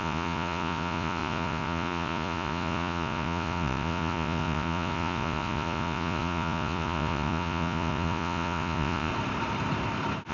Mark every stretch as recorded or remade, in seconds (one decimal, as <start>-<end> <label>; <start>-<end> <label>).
0.0-9.1 remade; 9.1-10.3 recorded